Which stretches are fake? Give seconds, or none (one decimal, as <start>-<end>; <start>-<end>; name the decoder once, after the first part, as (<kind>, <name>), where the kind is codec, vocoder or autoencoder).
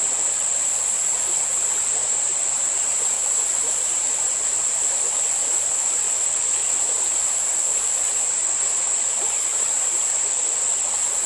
2.0-4.3 (vocoder, BigVGAN v2); 6.6-7.4; 9.5-10.1